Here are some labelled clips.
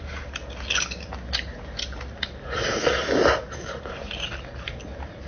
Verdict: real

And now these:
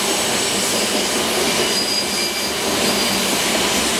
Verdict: real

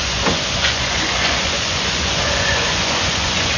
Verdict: fake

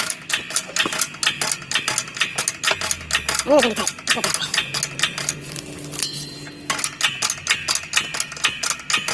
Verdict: real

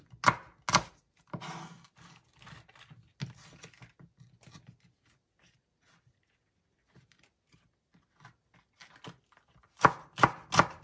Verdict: real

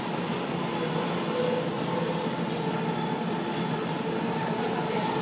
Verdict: real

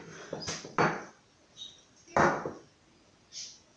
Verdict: real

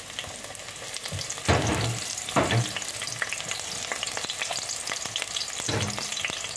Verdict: real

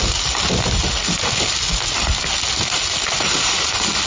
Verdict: real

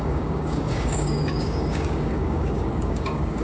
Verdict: fake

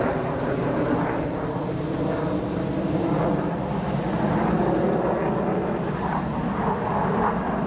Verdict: real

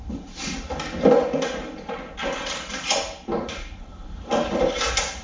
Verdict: real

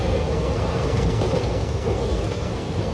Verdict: fake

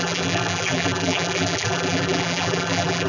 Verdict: fake